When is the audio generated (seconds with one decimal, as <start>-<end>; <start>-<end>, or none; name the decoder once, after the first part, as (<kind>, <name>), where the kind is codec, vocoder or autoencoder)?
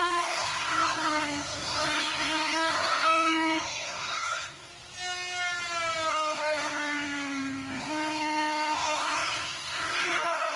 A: 0.0-4.7 (codec, SNAC); 6.1-10.6